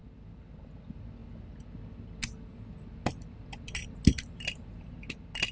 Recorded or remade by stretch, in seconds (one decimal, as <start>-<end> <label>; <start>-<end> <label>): 0.0-5.5 recorded